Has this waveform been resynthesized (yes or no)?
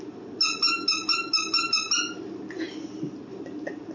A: no